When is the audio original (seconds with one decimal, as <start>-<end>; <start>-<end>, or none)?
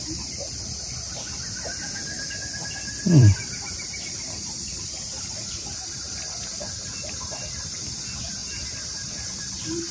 none